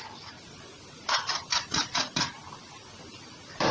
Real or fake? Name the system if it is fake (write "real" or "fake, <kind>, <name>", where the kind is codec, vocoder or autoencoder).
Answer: fake, vocoder, BigVGAN v2